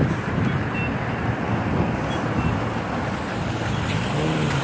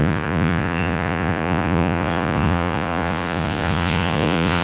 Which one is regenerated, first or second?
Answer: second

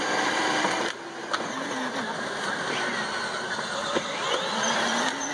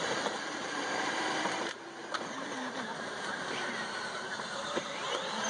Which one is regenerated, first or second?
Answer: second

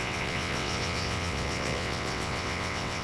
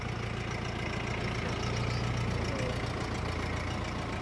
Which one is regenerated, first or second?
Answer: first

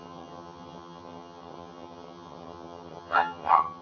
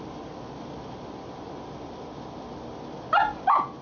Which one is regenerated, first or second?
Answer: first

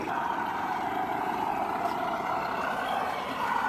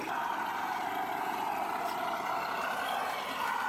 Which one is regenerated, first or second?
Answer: first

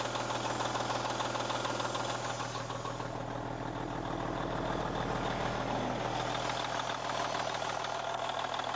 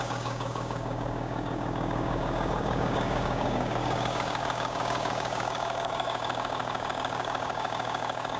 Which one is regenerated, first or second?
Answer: second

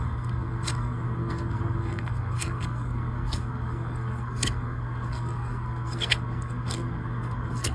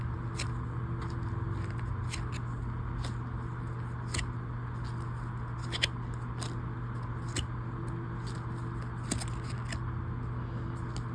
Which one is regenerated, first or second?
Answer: first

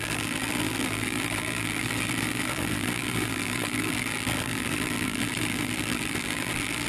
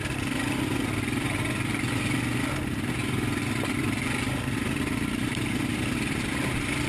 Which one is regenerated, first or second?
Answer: first